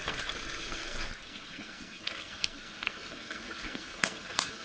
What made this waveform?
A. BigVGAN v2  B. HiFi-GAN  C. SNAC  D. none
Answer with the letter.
C